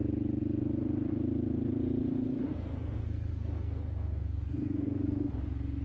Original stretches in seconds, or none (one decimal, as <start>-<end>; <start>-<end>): 0.0-2.4; 5.3-5.8